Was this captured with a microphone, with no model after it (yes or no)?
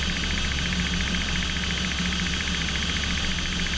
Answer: yes